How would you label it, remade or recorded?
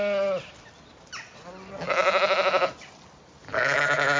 recorded